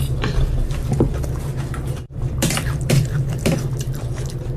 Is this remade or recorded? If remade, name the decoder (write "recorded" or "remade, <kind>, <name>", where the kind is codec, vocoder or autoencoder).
remade, vocoder, BigVGAN v2